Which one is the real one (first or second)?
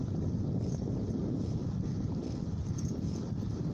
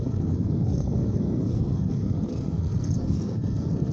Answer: first